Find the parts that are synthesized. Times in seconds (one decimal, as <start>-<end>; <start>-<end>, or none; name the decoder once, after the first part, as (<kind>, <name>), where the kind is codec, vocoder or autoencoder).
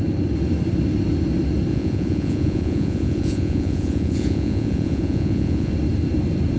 1.7-5.7 (vocoder, Vocos)